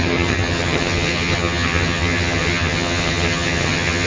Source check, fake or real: fake